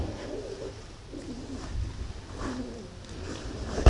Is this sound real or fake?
real